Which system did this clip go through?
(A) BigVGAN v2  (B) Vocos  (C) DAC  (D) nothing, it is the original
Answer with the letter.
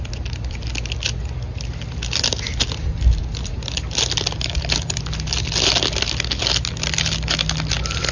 D